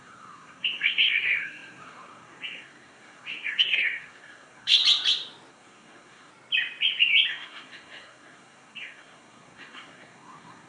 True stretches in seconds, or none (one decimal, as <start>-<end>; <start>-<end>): 4.8-5.5; 6.3-7.3